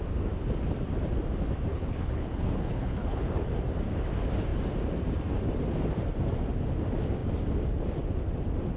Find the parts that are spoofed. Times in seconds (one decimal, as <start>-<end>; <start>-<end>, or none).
1.7-3.4